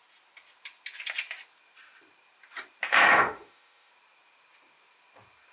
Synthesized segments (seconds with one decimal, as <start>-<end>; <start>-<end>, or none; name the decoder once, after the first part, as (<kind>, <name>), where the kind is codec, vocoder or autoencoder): 2.9-3.9 (autoencoder, DAC-VAE)